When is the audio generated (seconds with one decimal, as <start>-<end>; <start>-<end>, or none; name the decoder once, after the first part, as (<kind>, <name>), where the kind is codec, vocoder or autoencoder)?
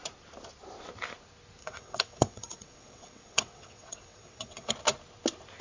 1.6-4.7 (vocoder, WaveNeXt)